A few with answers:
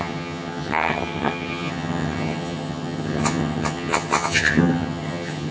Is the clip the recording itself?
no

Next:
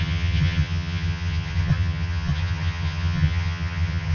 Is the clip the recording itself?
no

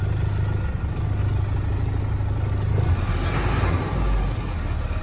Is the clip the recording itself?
yes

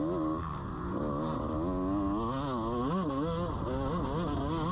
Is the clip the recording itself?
yes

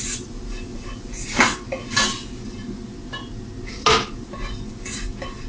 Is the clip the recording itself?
yes